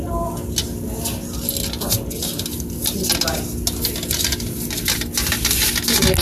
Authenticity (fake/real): real